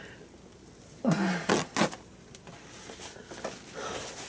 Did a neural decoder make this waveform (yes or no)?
no